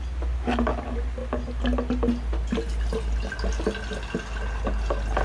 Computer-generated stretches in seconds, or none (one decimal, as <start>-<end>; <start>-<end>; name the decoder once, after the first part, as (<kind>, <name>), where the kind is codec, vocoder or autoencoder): none